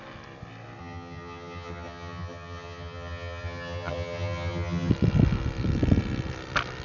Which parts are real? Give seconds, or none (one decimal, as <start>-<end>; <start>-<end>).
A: 0.0-0.8; 4.9-6.8